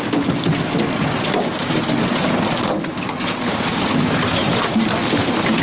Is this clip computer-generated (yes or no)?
no